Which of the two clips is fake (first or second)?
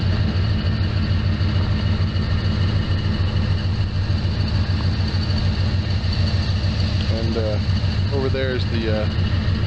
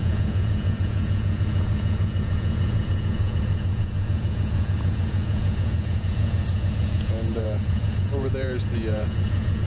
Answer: second